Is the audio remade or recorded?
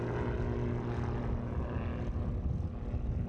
recorded